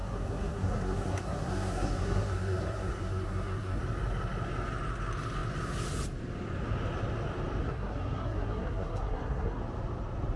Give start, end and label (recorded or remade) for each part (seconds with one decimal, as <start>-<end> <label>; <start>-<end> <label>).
0.0-3.8 remade; 3.8-7.6 recorded; 7.6-9.6 remade; 9.6-10.4 recorded